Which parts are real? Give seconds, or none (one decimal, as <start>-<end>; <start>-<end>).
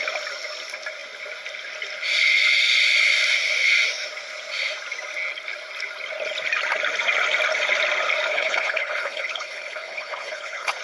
0.0-8.3